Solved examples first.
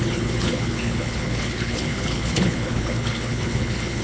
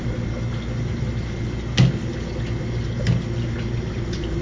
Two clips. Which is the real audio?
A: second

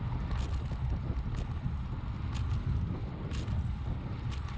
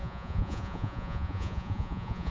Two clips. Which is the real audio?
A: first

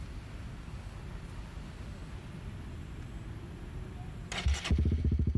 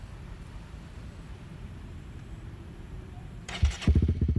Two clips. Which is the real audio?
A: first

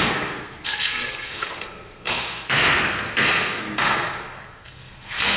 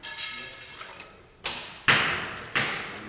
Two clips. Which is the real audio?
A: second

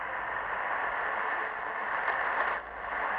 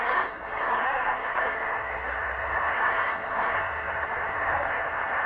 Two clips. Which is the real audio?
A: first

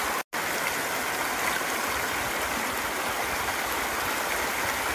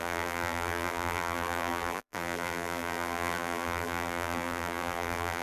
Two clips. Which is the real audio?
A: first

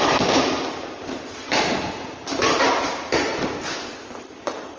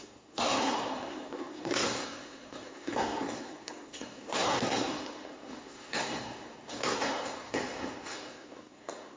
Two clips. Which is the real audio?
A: first